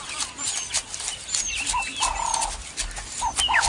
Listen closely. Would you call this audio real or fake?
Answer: real